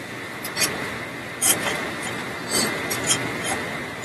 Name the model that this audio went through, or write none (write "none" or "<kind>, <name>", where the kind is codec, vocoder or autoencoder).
none